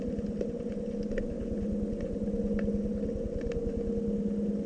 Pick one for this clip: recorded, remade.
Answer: recorded